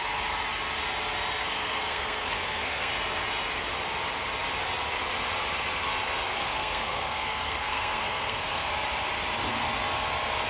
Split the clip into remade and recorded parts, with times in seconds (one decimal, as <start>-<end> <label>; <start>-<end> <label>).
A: 0.0-1.4 recorded; 1.4-2.9 remade; 2.9-6.4 recorded; 6.4-8.7 remade; 8.7-10.5 recorded